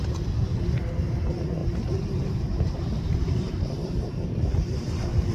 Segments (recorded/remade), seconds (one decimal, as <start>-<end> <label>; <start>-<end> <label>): 0.0-1.6 recorded; 1.6-4.8 remade; 4.8-5.3 recorded